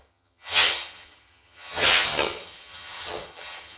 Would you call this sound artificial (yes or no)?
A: yes